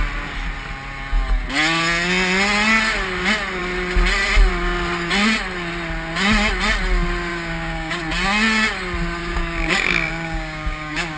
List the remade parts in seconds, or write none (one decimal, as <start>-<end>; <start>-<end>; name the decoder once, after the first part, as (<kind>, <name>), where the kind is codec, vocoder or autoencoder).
7.3-8.0 (codec, DAC); 9.2-11.2